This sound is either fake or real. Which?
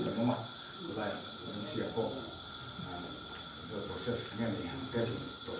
real